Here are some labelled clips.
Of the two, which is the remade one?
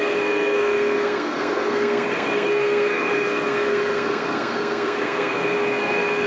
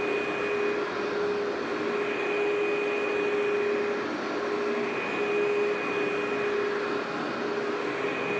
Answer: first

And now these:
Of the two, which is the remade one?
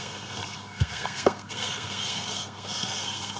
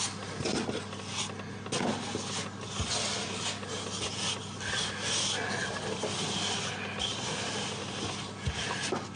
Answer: first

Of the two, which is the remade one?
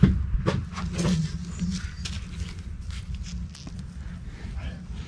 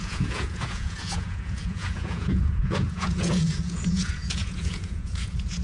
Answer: second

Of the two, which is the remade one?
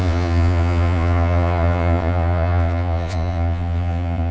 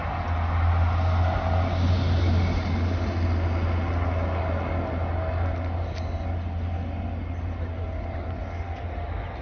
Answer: first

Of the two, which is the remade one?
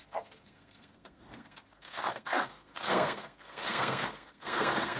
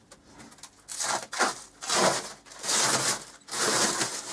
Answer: first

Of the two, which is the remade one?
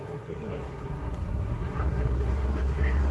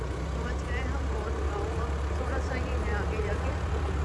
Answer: first